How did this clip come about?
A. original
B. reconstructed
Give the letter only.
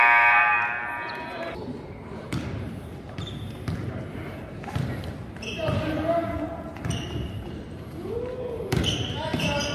B